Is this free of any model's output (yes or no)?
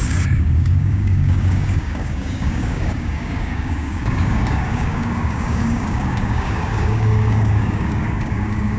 no